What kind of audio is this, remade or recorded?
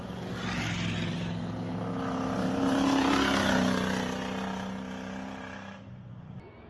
recorded